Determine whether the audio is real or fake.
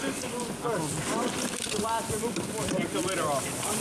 real